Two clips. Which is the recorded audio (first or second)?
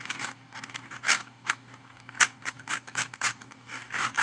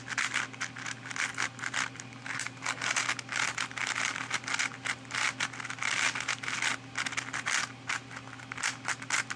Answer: second